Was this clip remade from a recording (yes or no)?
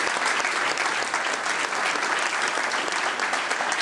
no